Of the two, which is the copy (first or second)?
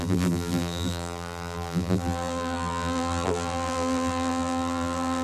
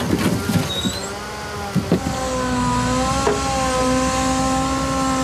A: first